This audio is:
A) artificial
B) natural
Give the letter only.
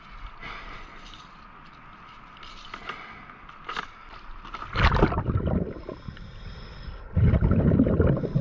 B